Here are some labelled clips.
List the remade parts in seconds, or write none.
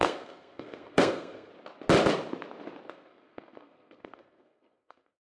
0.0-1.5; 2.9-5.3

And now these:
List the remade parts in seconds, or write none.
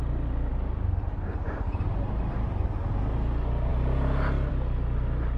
none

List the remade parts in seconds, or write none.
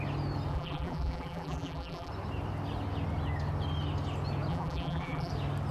0.5-2.1; 4.5-5.3